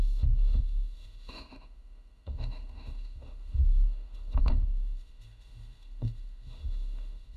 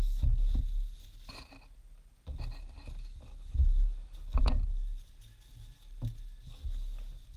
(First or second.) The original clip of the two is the second